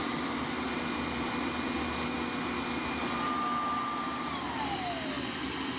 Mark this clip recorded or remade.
recorded